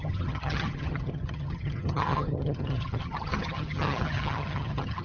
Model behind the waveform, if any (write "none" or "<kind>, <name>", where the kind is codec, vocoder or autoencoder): vocoder, HiFi-GAN